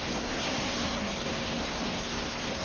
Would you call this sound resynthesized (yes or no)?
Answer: yes